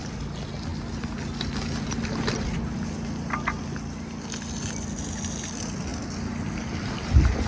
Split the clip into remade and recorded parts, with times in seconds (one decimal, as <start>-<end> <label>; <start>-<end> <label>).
0.0-7.5 recorded